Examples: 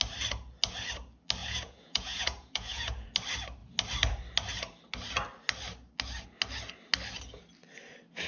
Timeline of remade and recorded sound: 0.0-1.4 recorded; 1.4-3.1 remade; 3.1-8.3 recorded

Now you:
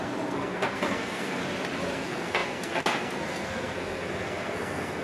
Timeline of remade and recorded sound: 0.0-1.4 remade; 1.4-1.9 recorded; 1.9-5.0 remade

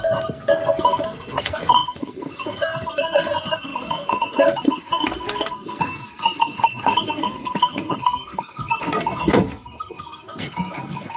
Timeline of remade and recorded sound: 0.0-11.2 remade

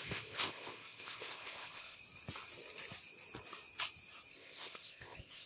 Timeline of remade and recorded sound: 0.0-2.0 remade; 2.0-4.3 recorded; 4.3-5.5 remade

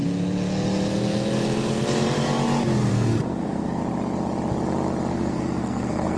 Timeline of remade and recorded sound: 0.0-2.9 recorded; 2.9-3.8 remade; 3.8-5.1 recorded; 5.1-6.2 remade